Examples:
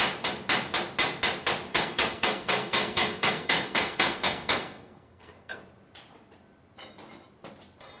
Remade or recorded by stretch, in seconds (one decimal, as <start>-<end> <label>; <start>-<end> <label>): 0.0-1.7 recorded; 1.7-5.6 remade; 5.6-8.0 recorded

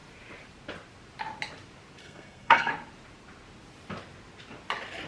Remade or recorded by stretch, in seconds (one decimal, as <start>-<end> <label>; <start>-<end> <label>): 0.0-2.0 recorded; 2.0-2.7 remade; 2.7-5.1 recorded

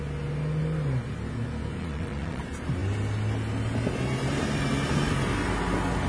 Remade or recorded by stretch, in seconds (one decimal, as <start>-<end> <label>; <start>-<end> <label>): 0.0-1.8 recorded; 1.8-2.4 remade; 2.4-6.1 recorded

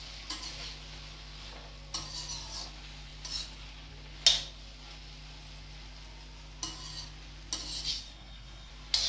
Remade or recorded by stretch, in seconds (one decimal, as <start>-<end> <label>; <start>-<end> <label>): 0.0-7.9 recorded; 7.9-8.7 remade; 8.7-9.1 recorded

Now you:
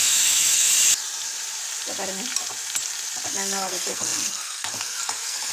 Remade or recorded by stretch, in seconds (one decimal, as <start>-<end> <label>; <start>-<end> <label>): 0.0-0.7 remade; 0.7-3.3 recorded; 3.3-5.5 remade